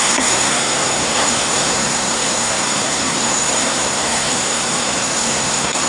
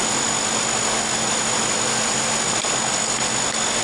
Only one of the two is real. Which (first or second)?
second